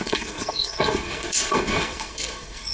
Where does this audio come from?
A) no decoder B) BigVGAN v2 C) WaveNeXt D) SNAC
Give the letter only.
D